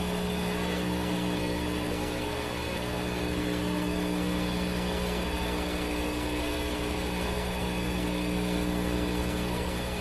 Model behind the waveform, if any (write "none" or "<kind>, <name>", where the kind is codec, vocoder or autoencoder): codec, SNAC